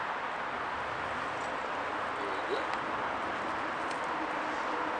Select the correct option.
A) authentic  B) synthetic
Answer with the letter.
A